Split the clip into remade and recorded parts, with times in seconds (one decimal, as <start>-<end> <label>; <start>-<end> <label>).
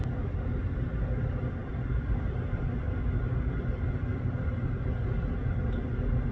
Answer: 0.0-6.3 recorded